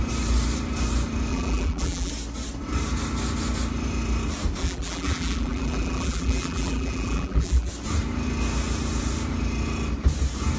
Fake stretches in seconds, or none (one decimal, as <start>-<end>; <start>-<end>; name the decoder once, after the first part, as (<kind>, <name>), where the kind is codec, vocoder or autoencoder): 1.3-2.1 (vocoder, BigVGAN v2); 4.6-7.7